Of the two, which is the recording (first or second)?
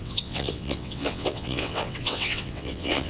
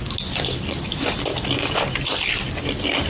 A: second